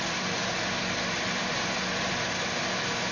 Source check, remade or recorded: recorded